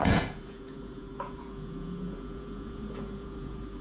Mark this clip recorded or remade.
remade